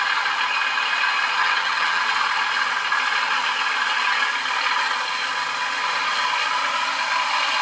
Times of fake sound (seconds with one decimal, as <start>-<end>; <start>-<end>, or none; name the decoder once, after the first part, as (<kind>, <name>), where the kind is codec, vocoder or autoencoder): 1.4-2.0 (vocoder, HiFi-GAN)